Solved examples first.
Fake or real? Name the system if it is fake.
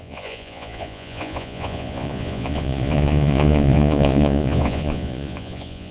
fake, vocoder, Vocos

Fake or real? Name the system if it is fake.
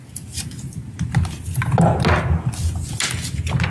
real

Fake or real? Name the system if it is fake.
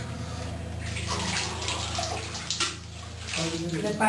real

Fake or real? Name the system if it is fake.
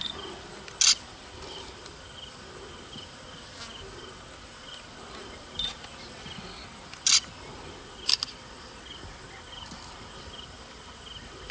real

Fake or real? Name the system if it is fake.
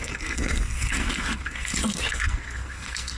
fake, codec, SNAC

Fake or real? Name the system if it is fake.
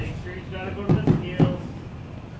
real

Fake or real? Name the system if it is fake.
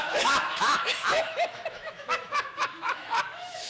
fake, autoencoder, DAC-VAE